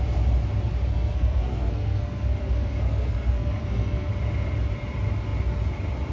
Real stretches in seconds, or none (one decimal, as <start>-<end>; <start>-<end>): 0.0-0.9; 4.1-6.1